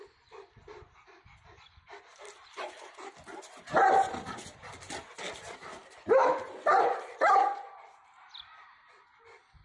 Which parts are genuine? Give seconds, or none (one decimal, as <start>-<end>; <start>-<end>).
0.0-2.1; 4.4-5.8; 7.6-9.6